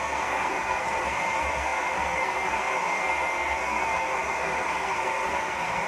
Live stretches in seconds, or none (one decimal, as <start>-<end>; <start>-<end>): none